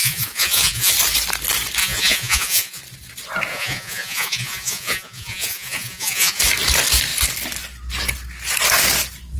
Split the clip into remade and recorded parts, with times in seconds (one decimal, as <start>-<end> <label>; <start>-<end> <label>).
0.0-0.9 remade; 0.9-1.8 recorded; 1.8-2.8 remade; 2.8-3.5 recorded; 3.5-6.4 remade; 6.4-9.4 recorded